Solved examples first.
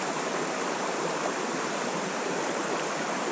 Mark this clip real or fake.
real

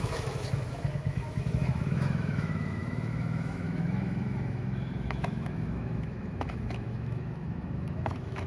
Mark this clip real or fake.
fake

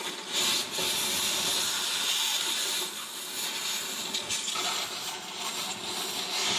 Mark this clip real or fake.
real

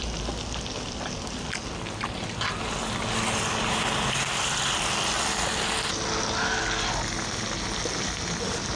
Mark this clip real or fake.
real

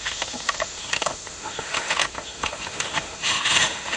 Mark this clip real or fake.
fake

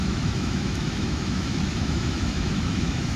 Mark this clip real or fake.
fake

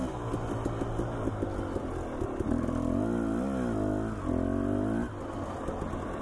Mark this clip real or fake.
real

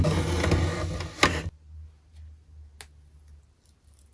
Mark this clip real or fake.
real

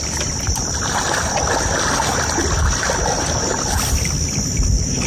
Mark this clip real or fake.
real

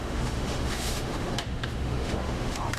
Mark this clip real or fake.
fake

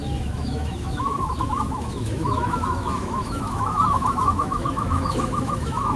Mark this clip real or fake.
fake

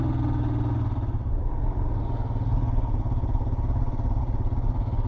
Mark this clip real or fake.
real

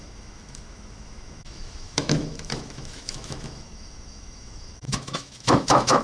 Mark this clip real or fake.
fake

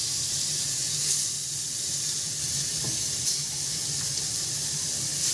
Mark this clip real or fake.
real